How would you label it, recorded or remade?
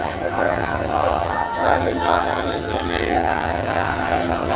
remade